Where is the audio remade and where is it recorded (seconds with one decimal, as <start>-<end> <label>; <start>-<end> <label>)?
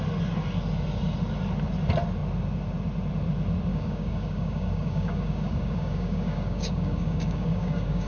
0.0-3.7 recorded; 3.7-8.1 remade